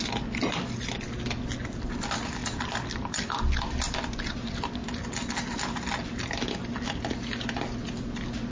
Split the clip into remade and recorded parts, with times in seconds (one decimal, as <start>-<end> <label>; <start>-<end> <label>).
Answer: 0.0-8.5 recorded

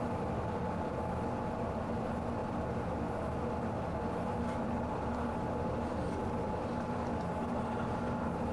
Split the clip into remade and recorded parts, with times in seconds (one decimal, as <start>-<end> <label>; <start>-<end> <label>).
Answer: 0.0-8.5 recorded

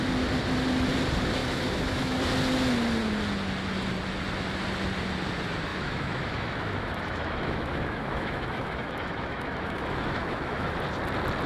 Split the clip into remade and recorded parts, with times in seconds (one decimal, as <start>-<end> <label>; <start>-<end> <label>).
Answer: 0.0-1.4 recorded; 1.4-2.2 remade; 2.2-5.7 recorded; 5.7-10.8 remade; 10.8-11.5 recorded

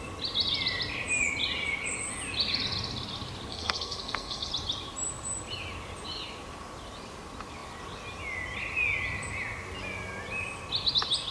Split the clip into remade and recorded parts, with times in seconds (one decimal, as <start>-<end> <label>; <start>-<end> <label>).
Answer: 0.0-3.5 recorded; 3.5-4.5 remade; 4.5-11.3 recorded

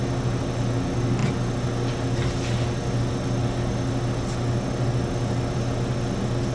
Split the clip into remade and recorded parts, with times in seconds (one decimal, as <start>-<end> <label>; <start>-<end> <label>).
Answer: 0.0-6.5 recorded

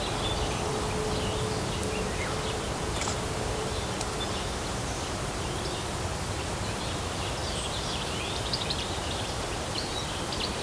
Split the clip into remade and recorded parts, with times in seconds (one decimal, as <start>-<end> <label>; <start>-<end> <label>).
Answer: 0.0-1.8 recorded; 1.8-5.5 remade; 5.5-7.4 recorded; 7.4-10.2 remade; 10.2-10.6 recorded